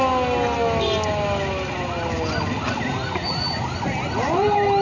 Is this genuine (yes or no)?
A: yes